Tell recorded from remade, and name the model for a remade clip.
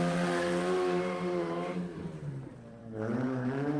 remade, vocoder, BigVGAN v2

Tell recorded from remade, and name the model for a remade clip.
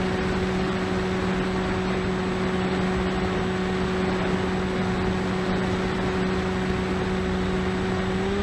recorded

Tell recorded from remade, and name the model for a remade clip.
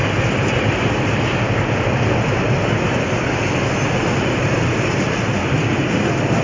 recorded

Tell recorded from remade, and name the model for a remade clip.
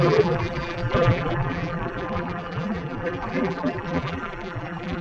remade, vocoder, BigVGAN v2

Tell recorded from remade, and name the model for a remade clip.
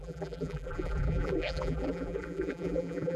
remade, vocoder, BigVGAN v2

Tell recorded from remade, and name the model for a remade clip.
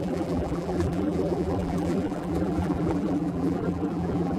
remade, vocoder, BigVGAN v2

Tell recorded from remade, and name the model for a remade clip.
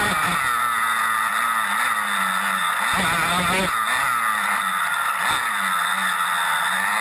recorded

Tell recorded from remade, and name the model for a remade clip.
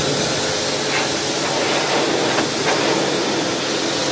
recorded